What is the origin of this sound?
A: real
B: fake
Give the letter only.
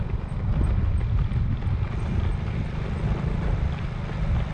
A